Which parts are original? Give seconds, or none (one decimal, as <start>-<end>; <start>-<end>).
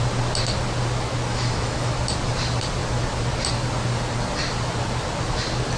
0.0-1.3; 1.9-5.8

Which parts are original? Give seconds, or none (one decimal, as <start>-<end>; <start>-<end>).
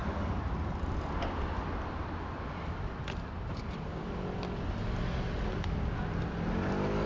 0.0-7.1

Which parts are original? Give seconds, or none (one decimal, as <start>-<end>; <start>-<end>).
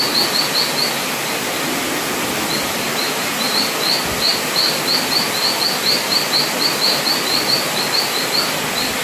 0.0-9.0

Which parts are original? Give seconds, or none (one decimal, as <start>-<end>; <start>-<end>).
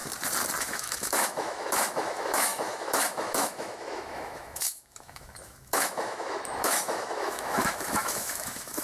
0.0-0.6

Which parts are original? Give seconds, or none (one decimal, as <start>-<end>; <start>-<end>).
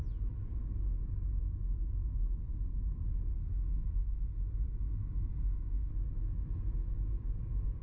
0.0-3.4; 5.9-7.8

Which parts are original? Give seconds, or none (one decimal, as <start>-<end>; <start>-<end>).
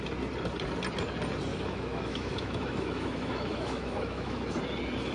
0.0-1.5; 4.6-5.1